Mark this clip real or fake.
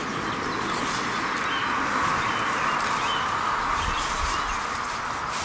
real